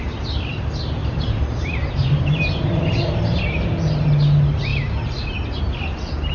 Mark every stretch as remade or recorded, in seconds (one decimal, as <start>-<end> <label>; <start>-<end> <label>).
0.0-1.0 recorded; 1.0-3.4 remade; 3.4-6.3 recorded